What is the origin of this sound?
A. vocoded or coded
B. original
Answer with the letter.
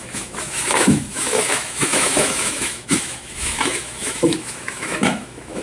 A